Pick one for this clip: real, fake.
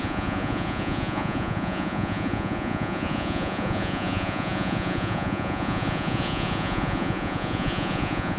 fake